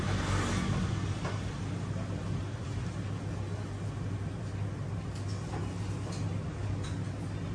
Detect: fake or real real